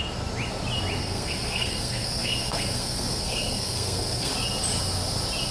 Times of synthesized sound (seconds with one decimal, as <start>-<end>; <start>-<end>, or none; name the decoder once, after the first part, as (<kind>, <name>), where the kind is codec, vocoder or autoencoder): 1.0-4.3 (codec, SNAC)